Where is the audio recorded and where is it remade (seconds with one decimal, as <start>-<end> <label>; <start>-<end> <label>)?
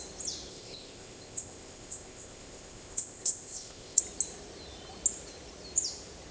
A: 0.0-0.5 recorded; 0.5-4.0 remade; 4.0-6.3 recorded